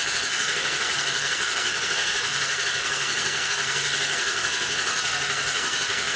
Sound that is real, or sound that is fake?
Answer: fake